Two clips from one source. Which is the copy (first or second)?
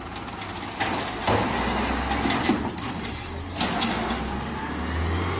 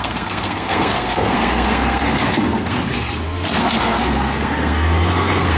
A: second